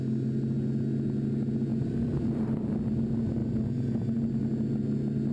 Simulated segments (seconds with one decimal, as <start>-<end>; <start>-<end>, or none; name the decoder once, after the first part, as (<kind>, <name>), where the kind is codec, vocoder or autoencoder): 1.7-2.7 (vocoder, BigVGAN v2)